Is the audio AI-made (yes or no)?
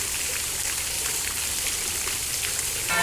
no